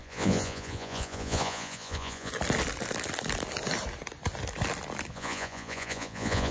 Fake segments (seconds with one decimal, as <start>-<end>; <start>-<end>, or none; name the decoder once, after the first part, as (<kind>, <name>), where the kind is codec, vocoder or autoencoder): 0.0-2.3 (vocoder, Vocos); 5.1-6.5